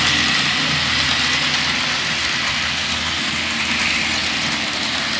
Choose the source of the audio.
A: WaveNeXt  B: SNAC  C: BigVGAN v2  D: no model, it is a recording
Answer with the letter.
D